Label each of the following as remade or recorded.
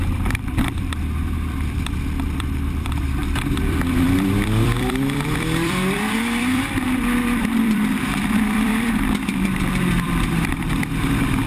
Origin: remade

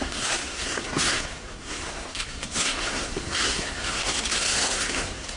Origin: remade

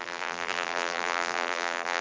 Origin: remade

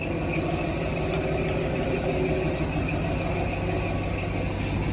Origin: recorded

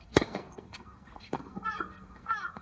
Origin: remade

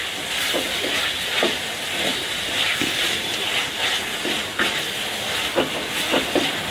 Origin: recorded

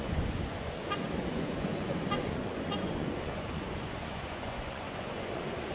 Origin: remade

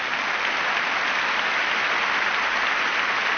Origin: recorded